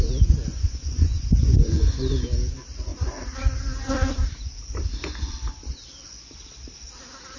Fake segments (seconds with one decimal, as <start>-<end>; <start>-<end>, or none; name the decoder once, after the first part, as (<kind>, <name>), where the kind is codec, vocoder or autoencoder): 0.5-2.0 (vocoder, Vocos)